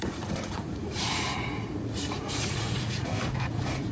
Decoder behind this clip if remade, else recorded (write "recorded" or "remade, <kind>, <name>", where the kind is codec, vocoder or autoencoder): remade, vocoder, Vocos